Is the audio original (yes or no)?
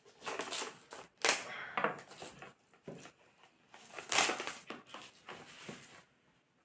yes